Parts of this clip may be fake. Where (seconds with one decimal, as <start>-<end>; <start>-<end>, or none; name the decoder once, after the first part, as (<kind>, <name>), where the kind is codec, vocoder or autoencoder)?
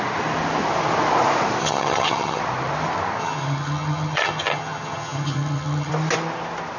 1.6-2.4 (vocoder, HiFi-GAN); 3.2-5.9